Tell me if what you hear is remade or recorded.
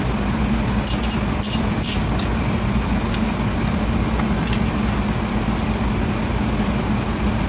recorded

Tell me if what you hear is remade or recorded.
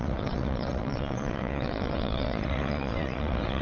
remade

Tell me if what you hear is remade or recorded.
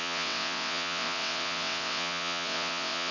remade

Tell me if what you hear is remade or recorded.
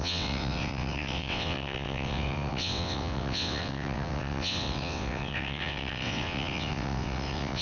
remade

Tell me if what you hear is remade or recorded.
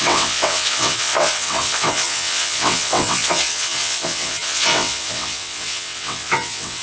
remade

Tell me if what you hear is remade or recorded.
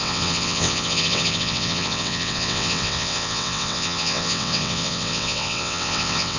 remade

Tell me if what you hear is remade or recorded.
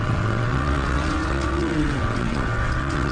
remade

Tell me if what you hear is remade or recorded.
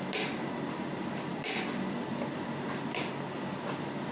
recorded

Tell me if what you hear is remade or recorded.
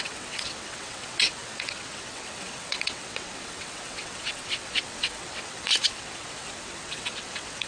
remade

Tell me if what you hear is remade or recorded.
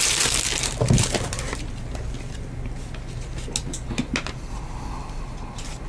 recorded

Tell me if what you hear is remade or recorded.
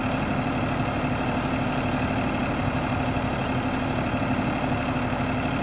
recorded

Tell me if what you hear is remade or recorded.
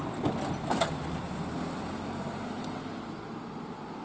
recorded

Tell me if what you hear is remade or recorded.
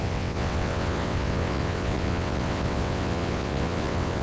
remade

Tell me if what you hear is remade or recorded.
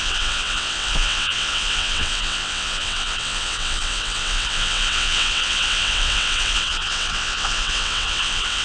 remade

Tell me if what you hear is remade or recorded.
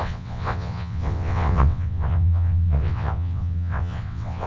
remade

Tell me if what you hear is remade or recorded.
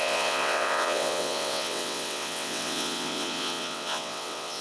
remade